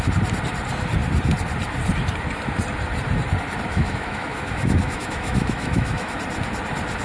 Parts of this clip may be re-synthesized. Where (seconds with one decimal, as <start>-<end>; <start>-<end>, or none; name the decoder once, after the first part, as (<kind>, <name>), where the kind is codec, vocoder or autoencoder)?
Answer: 3.7-6.2 (autoencoder, DAC-VAE)